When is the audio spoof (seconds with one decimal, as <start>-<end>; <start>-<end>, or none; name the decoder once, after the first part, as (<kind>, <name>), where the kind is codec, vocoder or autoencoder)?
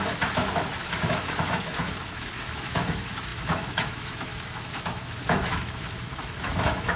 0.0-7.0 (autoencoder, DAC-VAE)